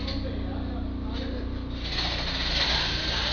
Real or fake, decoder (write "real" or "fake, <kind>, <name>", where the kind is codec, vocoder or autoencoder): real